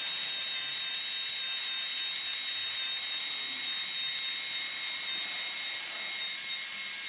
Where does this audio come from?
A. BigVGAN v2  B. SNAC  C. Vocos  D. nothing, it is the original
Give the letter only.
D